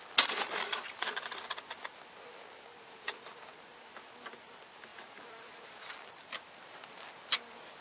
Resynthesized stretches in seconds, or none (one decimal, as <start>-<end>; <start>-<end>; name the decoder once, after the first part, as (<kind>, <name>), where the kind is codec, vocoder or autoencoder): 4.9-5.9 (vocoder, BigVGAN v2)